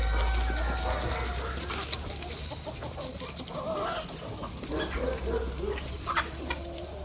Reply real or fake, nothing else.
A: real